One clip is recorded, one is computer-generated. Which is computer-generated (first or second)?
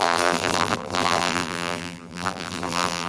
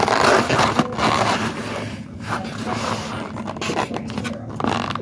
first